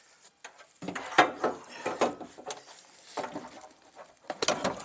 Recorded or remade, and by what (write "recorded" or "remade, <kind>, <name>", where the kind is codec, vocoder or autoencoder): recorded